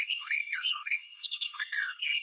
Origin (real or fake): fake